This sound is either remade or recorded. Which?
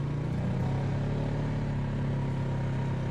recorded